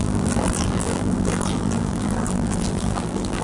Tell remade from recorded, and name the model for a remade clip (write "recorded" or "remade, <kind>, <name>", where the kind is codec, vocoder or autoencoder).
remade, vocoder, BigVGAN v2